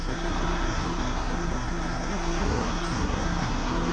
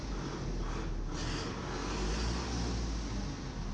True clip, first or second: second